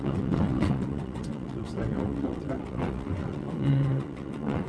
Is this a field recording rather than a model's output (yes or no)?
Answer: no